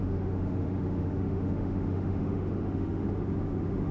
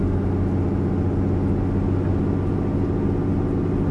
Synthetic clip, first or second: first